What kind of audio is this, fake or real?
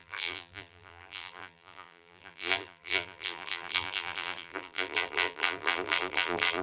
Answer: fake